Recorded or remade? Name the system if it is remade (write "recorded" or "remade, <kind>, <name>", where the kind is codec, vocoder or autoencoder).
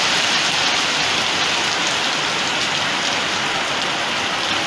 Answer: recorded